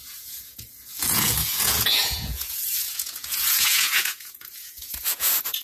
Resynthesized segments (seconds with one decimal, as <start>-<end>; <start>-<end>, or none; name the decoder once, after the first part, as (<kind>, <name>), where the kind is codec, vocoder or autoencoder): 0.0-5.6 (vocoder, Vocos)